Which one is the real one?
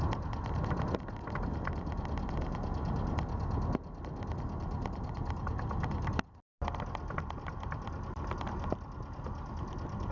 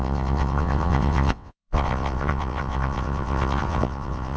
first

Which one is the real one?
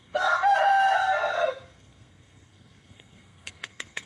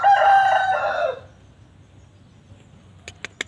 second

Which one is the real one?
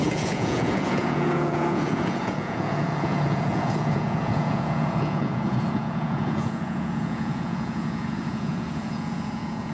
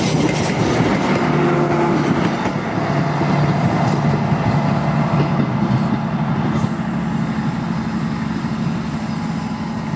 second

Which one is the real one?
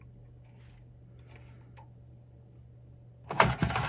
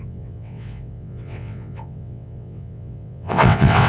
first